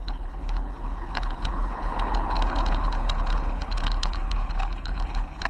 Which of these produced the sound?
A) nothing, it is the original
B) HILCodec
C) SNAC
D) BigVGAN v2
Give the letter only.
B